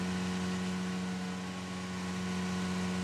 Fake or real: real